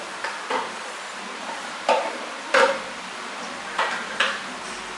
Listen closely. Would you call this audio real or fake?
fake